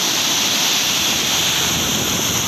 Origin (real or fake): real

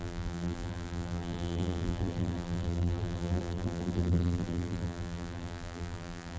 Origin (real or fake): fake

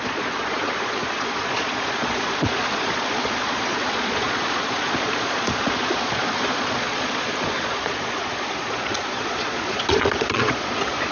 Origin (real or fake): fake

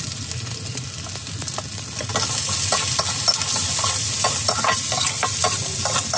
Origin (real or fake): real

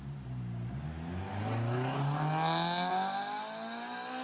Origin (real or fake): real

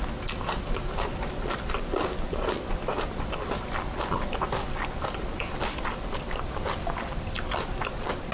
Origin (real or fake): real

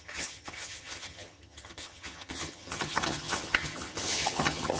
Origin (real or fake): fake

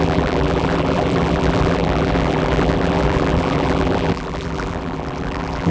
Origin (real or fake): fake